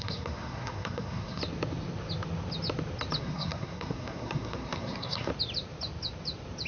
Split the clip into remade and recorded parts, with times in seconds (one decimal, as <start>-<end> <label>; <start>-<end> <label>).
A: 0.0-1.4 remade; 1.4-3.2 recorded; 3.2-5.3 remade; 5.3-6.7 recorded